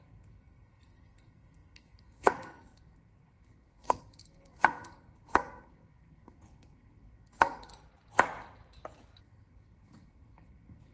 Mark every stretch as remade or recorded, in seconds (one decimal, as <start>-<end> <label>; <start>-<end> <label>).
0.0-7.7 remade; 7.7-9.2 recorded; 9.2-10.9 remade